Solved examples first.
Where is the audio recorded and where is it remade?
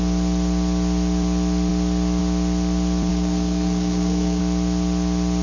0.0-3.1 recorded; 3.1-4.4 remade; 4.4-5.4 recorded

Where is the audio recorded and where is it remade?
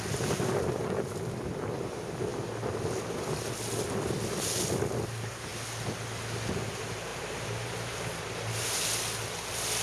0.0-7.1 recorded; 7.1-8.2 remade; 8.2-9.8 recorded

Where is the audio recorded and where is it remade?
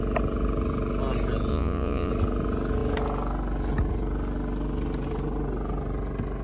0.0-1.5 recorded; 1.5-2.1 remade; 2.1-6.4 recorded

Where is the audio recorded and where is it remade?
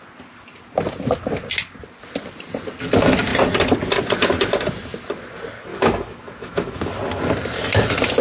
0.0-5.7 recorded; 5.7-6.8 remade; 6.8-8.2 recorded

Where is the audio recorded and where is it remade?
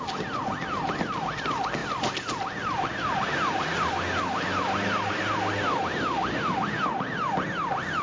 0.0-8.0 recorded